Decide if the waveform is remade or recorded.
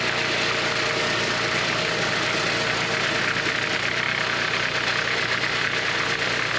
recorded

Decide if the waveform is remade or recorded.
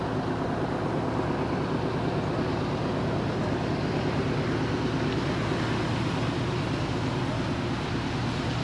recorded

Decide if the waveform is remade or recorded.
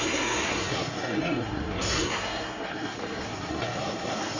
remade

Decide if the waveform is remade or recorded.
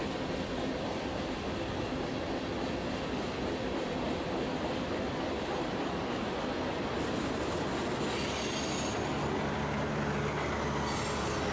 recorded